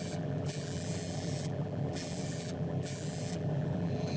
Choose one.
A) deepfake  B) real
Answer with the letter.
A